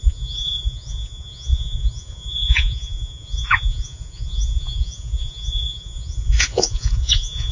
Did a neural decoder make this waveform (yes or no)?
yes